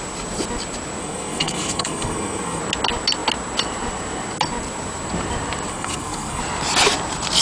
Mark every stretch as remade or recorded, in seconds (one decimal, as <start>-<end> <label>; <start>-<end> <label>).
0.0-1.0 recorded; 1.0-2.6 remade; 2.6-5.7 recorded; 5.7-6.4 remade; 6.4-7.4 recorded

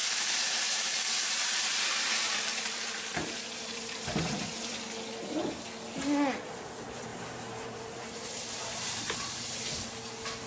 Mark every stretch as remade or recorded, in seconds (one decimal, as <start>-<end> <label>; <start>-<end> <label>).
0.0-4.7 remade; 4.7-7.1 recorded; 7.1-9.6 remade; 9.6-10.5 recorded

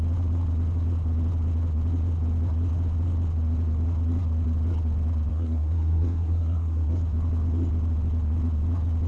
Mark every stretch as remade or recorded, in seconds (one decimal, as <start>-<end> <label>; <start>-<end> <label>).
0.0-5.3 recorded; 5.3-6.9 remade; 6.9-9.1 recorded